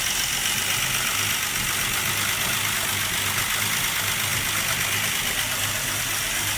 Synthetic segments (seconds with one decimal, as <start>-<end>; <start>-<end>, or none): none